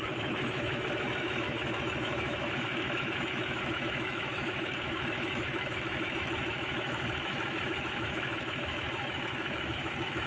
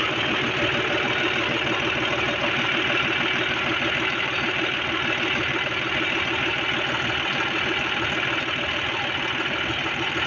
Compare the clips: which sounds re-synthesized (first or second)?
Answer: first